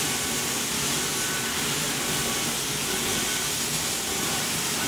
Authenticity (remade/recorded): recorded